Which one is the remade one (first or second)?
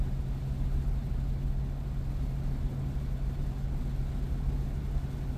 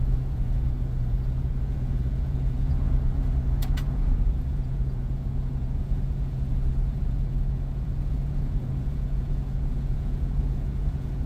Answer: second